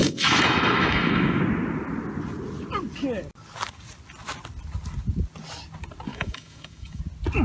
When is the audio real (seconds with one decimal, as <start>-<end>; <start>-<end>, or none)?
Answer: 1.4-6.1; 7.0-7.4